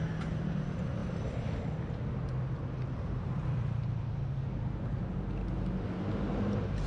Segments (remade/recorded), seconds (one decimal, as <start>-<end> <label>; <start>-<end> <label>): 0.0-6.9 recorded